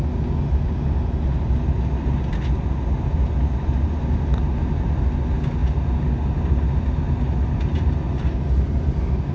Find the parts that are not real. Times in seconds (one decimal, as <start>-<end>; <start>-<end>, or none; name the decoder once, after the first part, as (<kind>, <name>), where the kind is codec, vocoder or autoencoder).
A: none